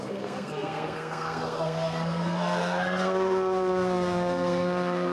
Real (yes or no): no